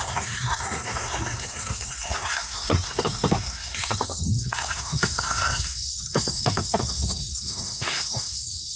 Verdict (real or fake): fake